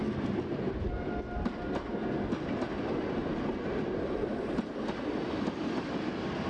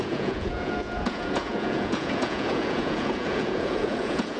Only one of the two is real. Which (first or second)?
first